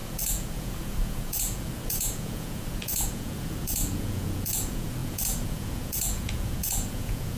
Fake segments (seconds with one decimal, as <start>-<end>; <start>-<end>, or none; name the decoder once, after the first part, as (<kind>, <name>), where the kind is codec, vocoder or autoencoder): 0.0-7.4 (vocoder, Vocos)